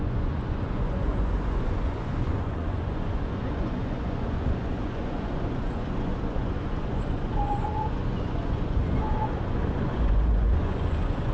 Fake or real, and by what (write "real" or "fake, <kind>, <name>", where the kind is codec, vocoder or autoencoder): fake, vocoder, Vocos